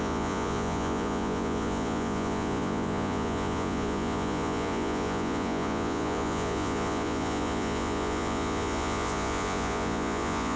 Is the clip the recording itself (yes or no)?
no